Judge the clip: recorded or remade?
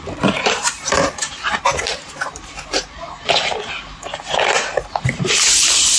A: remade